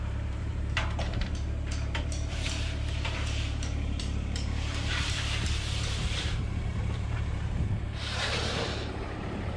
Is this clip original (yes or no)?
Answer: no